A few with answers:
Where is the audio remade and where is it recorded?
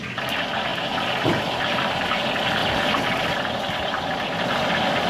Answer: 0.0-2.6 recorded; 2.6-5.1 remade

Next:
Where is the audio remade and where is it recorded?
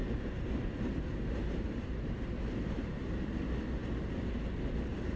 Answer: 0.0-3.1 remade; 3.1-5.2 recorded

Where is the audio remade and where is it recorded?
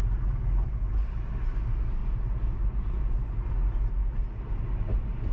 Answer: 0.0-5.3 recorded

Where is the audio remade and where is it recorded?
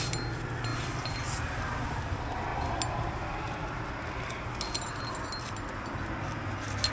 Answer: 0.0-6.9 recorded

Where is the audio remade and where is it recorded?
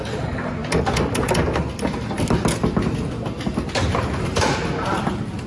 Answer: 0.0-5.5 recorded